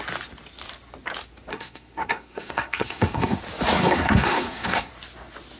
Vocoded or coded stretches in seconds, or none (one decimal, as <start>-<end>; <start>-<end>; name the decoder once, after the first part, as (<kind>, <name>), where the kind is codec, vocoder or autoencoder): 1.5-3.4 (codec, SNAC); 3.8-4.9